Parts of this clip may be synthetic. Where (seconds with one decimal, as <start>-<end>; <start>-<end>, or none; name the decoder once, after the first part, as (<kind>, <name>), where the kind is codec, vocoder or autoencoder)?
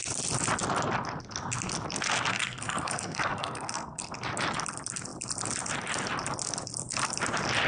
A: 2.3-4.0 (codec, SNAC)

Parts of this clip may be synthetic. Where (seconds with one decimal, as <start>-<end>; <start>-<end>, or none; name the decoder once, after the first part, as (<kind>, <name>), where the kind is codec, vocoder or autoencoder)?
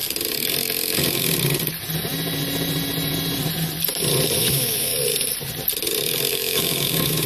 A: 4.4-4.9 (autoencoder, DAC-VAE); 6.3-7.3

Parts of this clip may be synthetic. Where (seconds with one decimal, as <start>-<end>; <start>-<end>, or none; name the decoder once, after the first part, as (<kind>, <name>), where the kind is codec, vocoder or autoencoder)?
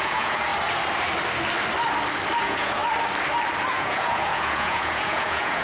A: 0.0-0.5 (vocoder, Vocos); 2.4-2.8; 3.7-5.6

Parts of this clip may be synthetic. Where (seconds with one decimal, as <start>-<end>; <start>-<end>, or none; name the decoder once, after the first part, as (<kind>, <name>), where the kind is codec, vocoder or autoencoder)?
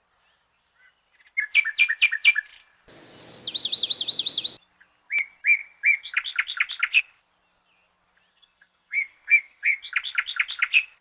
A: 8.3-9.8 (codec, SNAC)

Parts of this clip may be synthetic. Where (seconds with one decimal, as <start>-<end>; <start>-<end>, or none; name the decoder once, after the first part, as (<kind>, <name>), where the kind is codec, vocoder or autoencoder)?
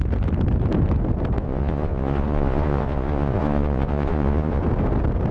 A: 1.4-4.6 (vocoder, Vocos)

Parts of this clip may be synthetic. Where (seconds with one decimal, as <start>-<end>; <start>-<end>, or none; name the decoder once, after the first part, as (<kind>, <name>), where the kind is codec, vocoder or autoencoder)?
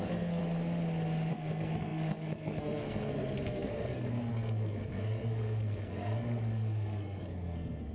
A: 0.0-0.4 (codec, SNAC); 1.3-7.9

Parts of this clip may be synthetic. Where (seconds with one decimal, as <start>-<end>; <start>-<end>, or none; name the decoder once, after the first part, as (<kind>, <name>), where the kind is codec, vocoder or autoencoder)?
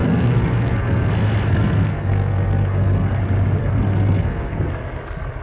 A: 0.0-1.1 (codec, SNAC); 1.5-3.2; 3.6-4.7